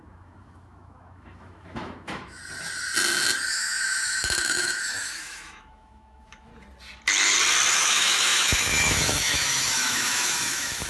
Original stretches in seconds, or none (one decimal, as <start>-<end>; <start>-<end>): 2.4-3.5; 6.5-7.7